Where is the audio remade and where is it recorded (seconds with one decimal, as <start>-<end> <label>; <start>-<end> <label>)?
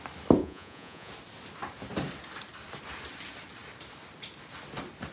0.0-0.4 recorded; 0.4-1.1 remade; 1.1-5.1 recorded